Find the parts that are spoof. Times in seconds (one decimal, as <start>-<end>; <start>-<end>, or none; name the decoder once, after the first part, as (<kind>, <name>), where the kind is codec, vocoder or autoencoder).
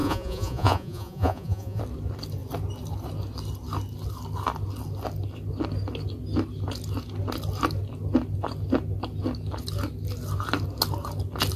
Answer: 0.0-1.8 (vocoder, Vocos)